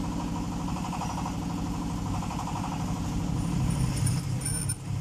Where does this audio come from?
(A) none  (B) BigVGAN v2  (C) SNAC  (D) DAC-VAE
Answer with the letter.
A